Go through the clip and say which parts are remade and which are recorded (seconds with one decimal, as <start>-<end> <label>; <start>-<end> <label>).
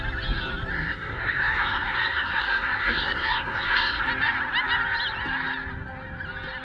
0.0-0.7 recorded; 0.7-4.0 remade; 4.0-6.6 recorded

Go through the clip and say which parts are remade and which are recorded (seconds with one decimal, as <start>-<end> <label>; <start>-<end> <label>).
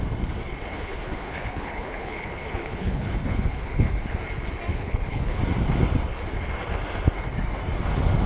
0.0-0.7 recorded; 0.7-4.2 remade; 4.2-4.7 recorded; 4.7-5.4 remade; 5.4-8.3 recorded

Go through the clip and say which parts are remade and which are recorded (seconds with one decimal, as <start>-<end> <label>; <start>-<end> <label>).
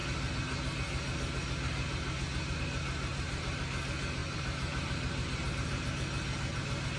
0.0-3.1 recorded; 3.1-3.6 remade; 3.6-4.2 recorded; 4.2-5.5 remade; 5.5-7.0 recorded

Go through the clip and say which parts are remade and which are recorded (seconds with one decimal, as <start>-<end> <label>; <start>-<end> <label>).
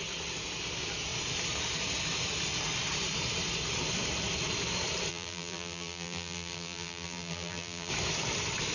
0.0-5.1 recorded; 5.1-7.9 remade; 7.9-8.7 recorded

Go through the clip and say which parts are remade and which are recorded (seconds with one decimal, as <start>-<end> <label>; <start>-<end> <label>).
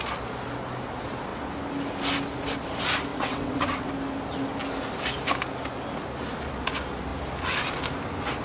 0.0-3.1 recorded; 3.1-3.9 remade; 3.9-8.4 recorded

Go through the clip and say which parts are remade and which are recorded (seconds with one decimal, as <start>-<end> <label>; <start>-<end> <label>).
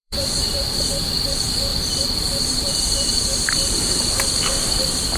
0.0-0.8 remade; 0.8-1.7 recorded; 1.7-4.1 remade; 4.1-5.2 recorded